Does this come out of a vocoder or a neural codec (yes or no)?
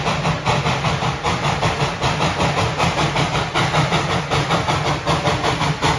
no